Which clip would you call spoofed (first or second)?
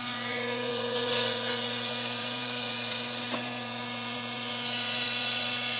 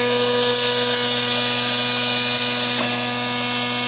first